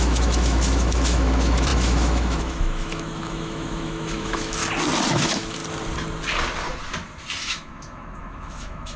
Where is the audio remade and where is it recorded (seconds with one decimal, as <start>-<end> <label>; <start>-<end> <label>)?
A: 0.0-4.6 remade; 4.6-5.1 recorded; 5.1-5.6 remade; 5.6-7.4 recorded; 7.4-9.0 remade